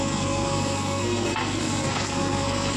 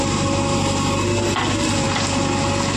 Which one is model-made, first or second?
first